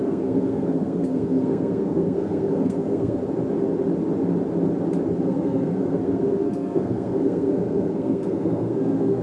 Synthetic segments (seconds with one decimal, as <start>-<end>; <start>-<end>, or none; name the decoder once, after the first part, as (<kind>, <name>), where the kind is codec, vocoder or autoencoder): 0.0-3.2 (codec, SNAC); 5.2-9.2